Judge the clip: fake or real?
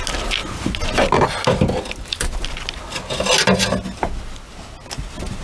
real